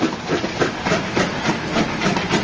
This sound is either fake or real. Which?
real